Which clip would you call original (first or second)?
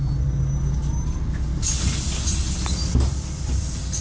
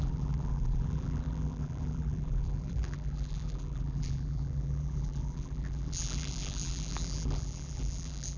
first